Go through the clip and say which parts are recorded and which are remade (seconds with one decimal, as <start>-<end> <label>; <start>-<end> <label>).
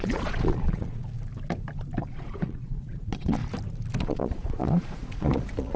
0.0-1.0 remade; 1.0-2.0 recorded; 2.0-3.4 remade; 3.4-4.0 recorded; 4.0-5.8 remade